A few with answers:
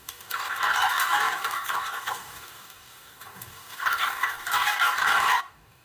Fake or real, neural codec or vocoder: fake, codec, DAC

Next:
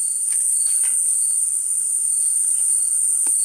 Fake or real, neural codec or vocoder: real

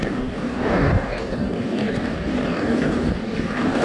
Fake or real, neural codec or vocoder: fake, codec, DAC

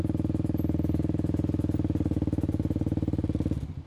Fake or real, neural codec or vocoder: real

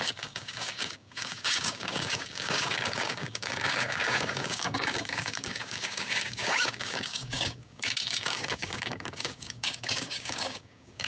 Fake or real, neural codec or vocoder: fake, codec, DAC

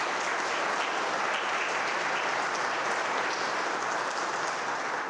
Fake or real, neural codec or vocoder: real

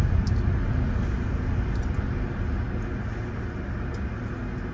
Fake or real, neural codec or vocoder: real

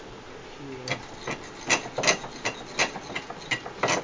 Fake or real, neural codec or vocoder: real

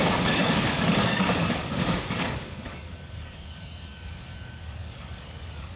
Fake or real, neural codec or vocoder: fake, codec, DAC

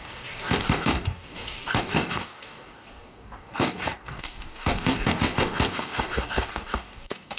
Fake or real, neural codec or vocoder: fake, codec, DAC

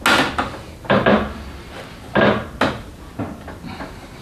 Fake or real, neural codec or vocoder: real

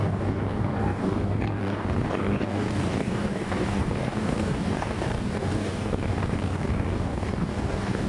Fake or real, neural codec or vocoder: fake, codec, DAC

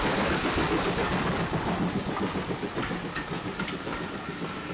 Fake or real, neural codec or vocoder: fake, codec, DAC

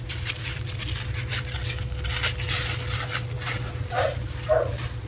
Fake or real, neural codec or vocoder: real